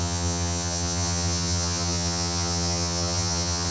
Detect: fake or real fake